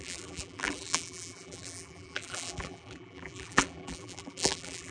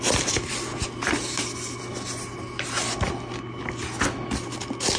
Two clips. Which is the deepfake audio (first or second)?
first